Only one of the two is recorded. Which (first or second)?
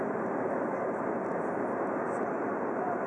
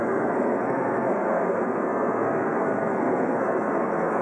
first